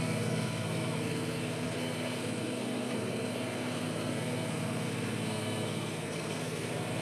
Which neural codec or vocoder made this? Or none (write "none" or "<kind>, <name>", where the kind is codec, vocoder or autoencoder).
codec, SNAC